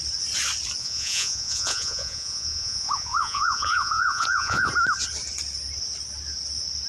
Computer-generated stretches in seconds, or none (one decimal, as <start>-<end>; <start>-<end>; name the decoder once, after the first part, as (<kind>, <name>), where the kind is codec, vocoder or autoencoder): 0.8-4.7 (vocoder, Vocos)

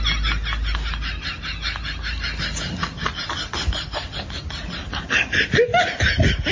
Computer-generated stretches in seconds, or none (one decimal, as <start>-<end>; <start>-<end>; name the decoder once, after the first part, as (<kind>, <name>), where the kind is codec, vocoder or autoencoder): none

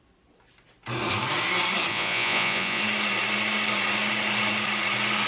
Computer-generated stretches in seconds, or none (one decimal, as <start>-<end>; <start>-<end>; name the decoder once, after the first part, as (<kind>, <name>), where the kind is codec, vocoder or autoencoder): 1.9-2.8 (vocoder, Vocos)

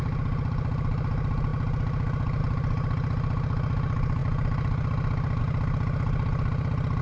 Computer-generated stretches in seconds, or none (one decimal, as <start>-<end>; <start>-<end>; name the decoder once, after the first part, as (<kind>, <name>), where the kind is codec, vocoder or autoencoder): none